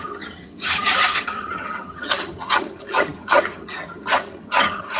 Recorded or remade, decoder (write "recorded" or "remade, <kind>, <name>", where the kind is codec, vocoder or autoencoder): remade, vocoder, HiFi-GAN